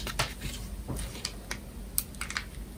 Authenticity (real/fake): real